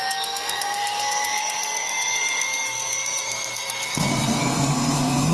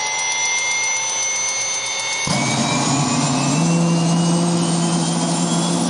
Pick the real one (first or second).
second